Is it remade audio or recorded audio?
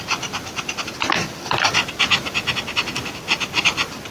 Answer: recorded